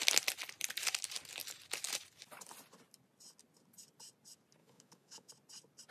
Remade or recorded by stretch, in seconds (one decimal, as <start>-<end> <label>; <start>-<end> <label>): 0.0-4.6 recorded; 4.6-5.3 remade; 5.3-5.9 recorded